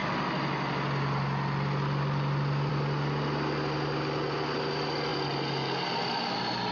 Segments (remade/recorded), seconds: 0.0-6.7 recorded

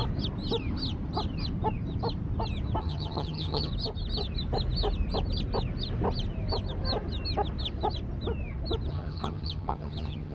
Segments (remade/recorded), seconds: 0.0-2.8 recorded; 2.8-3.7 remade; 3.7-8.9 recorded; 8.9-10.3 remade